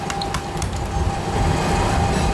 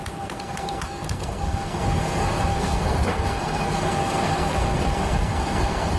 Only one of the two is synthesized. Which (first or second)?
second